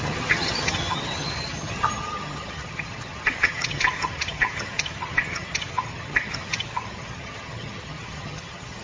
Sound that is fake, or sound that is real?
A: fake